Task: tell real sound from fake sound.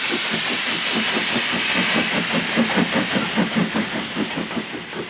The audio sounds real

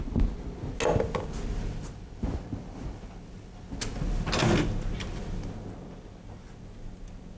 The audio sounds real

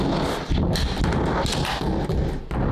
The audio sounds real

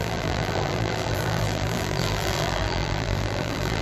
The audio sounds fake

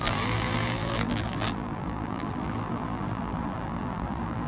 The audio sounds fake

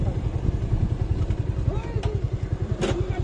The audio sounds fake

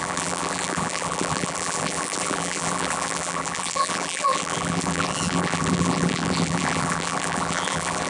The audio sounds fake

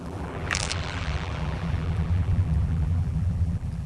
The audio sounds fake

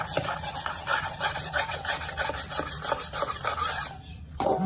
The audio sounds fake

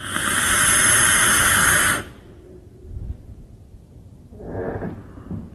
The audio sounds real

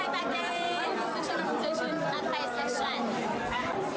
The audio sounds fake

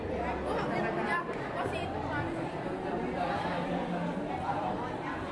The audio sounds real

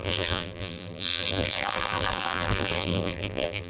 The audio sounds fake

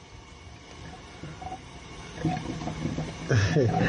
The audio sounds fake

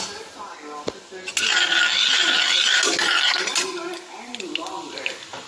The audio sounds real